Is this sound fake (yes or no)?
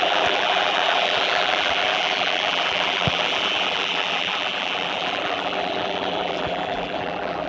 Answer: yes